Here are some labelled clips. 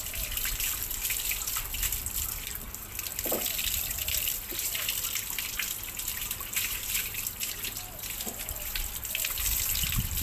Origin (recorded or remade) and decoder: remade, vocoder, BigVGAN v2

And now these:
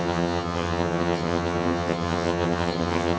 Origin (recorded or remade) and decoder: remade, vocoder, HiFi-GAN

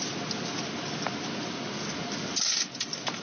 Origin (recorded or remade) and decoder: recorded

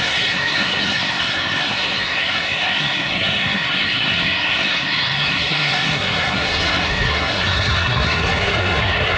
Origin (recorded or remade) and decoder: remade, codec, SNAC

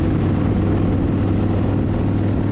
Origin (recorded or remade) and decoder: recorded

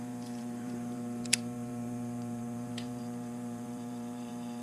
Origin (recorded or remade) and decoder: remade, vocoder, BigVGAN v2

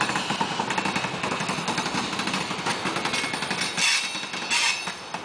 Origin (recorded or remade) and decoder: recorded